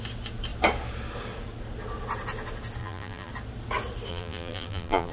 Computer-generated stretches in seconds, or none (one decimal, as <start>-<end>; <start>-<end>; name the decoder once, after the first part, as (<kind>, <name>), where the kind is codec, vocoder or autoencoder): 2.8-3.3 (vocoder, BigVGAN v2); 4.1-5.1